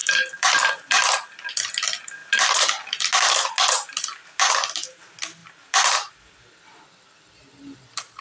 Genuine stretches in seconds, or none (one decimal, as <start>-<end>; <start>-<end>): 1.5-5.4; 6.2-8.2